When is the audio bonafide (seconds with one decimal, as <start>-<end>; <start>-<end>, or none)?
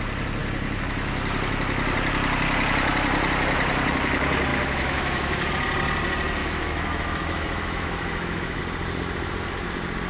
0.0-4.5; 5.5-6.4; 8.6-10.1